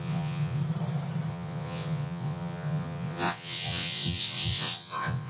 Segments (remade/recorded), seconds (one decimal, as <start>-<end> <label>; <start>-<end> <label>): 0.0-0.6 remade; 0.6-1.3 recorded; 1.3-5.3 remade